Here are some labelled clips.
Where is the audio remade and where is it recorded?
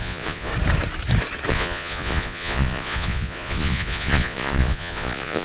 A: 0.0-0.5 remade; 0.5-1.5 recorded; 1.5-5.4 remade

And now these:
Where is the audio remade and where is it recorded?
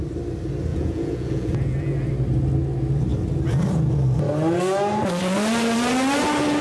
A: 0.0-0.7 recorded; 0.7-2.1 remade; 2.1-6.6 recorded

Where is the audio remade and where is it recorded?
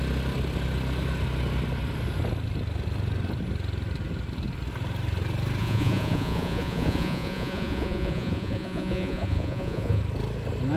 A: 0.0-5.6 recorded; 5.6-10.0 remade; 10.0-10.8 recorded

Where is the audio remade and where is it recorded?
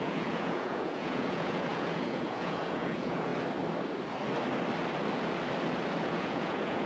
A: 0.0-3.3 remade; 3.3-6.0 recorded; 6.0-6.9 remade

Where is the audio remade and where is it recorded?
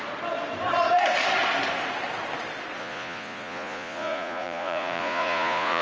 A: 0.0-2.8 recorded; 2.8-5.8 remade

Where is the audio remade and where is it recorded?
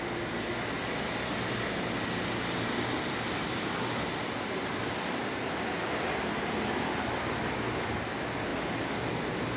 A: 0.0-9.6 recorded